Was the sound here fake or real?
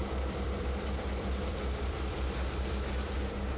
fake